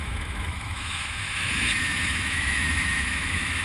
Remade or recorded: remade